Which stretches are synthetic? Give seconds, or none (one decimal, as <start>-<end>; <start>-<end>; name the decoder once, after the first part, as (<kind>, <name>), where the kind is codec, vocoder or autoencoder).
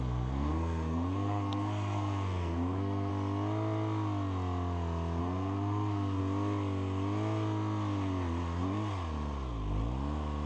0.0-3.1 (codec, SNAC); 5.2-6.2